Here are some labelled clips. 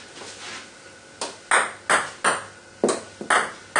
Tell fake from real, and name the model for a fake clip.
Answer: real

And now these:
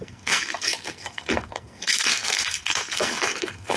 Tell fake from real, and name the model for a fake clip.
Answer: fake, codec, SNAC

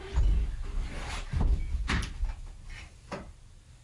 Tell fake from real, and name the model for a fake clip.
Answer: real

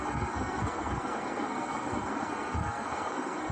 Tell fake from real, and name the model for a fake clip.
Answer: fake, codec, SNAC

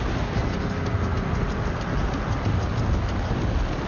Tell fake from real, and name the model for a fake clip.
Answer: real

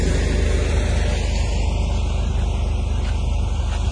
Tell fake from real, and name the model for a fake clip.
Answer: real